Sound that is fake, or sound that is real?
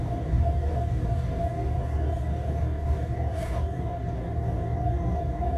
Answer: fake